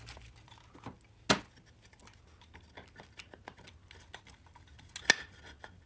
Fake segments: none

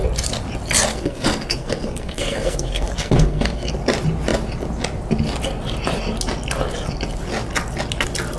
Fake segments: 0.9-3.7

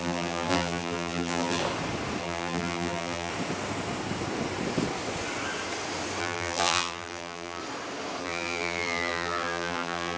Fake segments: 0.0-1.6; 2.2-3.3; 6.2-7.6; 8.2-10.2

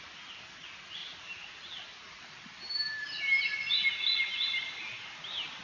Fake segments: none

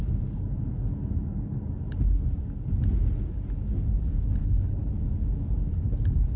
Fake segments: 4.4-4.9; 5.7-6.4

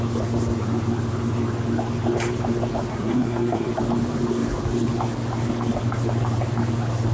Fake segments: 2.9-3.7

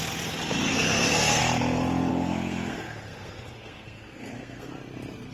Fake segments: 0.7-1.4; 2.1-4.7

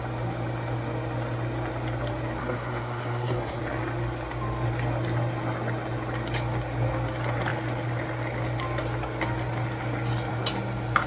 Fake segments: 2.4-3.6